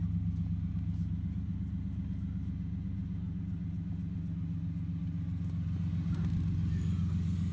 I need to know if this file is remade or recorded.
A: recorded